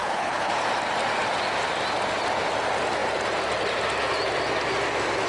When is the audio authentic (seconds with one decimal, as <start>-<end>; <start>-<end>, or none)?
0.6-5.3